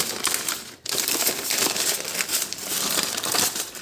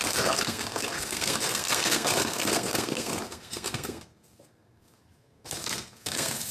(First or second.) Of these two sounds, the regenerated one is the second